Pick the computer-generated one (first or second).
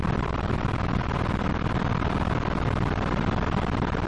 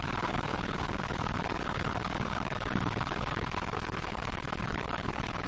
second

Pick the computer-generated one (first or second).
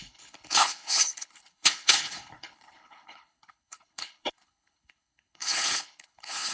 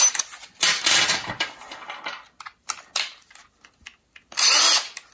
first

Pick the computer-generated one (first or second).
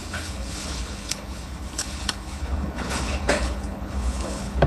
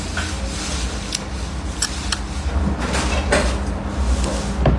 first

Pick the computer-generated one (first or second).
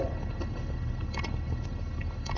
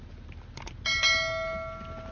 first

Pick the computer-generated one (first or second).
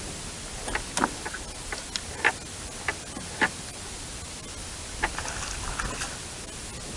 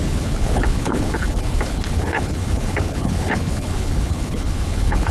second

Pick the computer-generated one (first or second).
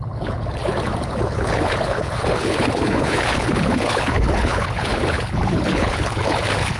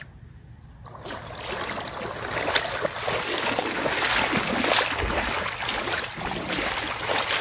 first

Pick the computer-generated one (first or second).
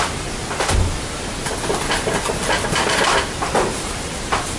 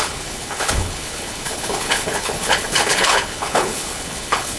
second